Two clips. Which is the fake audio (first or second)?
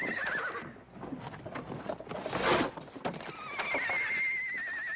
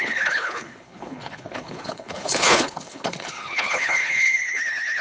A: second